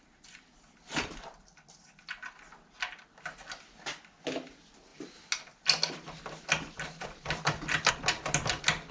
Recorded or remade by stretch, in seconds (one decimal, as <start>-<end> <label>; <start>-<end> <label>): 0.0-8.9 recorded